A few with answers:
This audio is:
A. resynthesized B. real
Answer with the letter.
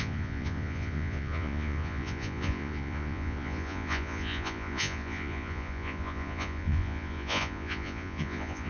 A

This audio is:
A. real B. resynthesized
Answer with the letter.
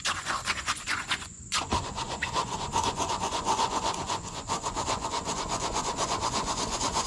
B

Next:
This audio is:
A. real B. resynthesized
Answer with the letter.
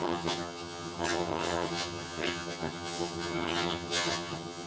B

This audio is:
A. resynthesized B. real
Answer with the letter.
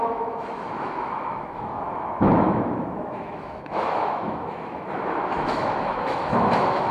A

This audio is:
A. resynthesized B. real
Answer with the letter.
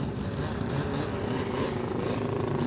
B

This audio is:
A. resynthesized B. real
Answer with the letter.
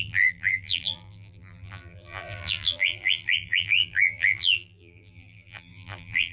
A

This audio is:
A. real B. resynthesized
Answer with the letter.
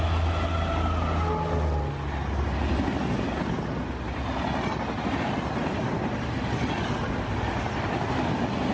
A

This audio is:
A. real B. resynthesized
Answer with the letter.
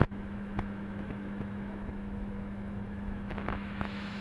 B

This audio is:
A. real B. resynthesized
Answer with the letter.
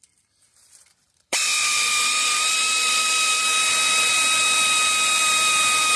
B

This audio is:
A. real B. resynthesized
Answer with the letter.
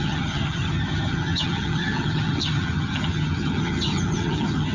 B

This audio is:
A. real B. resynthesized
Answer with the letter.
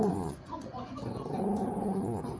B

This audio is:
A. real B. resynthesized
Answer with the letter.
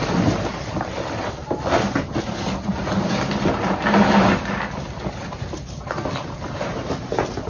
A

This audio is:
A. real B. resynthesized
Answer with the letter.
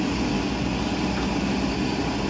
A